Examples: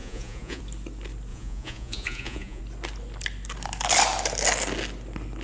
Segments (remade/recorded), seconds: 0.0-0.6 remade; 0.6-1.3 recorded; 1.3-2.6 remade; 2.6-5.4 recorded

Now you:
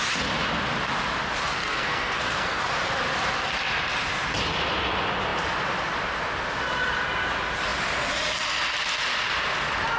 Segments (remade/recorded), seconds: 0.0-1.6 recorded; 1.6-2.6 remade; 2.6-10.0 recorded

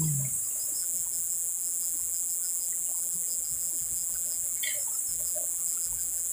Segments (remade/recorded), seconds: 0.0-0.8 recorded; 0.8-4.6 remade; 4.6-5.1 recorded; 5.1-6.3 remade

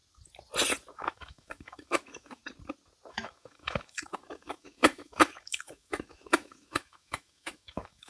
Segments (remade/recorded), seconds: 0.0-0.9 recorded; 0.9-2.4 remade; 2.4-3.1 recorded; 3.1-8.1 remade